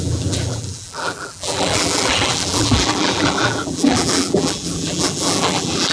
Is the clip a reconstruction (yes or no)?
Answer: yes